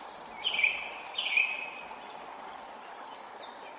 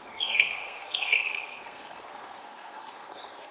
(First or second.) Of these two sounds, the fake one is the second